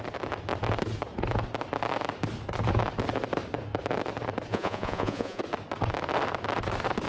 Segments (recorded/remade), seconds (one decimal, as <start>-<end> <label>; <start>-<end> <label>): 0.0-4.5 recorded; 4.5-5.4 remade; 5.4-7.1 recorded